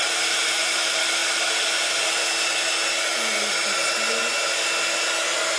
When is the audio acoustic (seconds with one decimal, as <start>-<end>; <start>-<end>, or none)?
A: 0.0-5.6

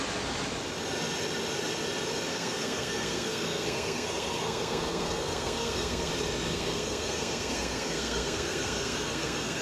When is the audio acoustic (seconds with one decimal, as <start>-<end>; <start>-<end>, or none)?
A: 0.0-2.3; 6.1-6.5